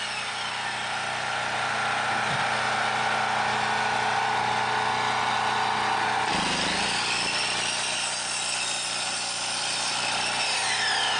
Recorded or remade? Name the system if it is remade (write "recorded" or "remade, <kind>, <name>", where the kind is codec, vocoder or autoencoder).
recorded